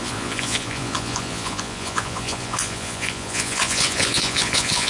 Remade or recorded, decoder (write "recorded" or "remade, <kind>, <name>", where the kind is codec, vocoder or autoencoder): remade, vocoder, Vocos